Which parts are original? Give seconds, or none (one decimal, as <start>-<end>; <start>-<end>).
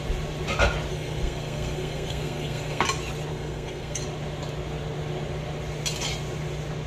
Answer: 0.0-0.9; 2.8-3.3; 4.0-6.9